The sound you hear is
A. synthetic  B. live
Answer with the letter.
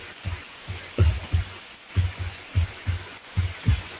A